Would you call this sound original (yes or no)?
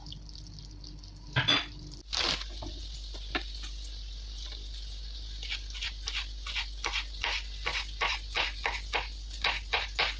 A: yes